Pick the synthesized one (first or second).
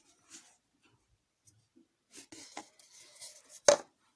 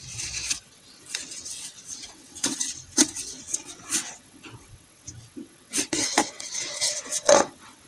second